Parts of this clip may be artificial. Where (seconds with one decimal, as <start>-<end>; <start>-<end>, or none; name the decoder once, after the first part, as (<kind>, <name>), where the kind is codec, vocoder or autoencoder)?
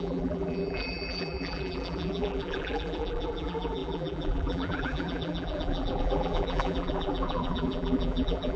0.0-8.6 (vocoder, BigVGAN v2)